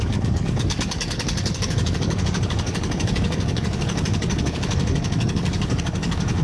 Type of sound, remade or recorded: remade